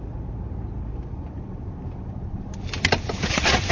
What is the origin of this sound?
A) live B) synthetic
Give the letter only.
A